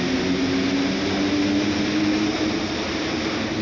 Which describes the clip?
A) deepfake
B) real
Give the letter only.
B